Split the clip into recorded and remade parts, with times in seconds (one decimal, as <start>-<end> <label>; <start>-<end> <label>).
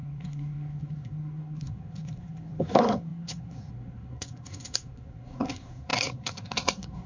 0.0-7.1 remade